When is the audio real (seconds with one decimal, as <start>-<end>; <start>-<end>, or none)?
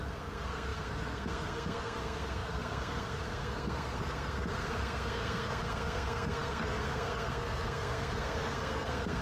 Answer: none